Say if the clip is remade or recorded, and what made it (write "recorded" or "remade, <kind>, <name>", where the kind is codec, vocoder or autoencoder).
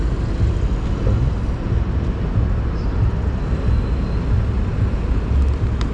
recorded